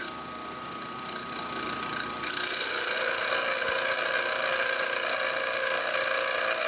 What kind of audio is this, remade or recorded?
recorded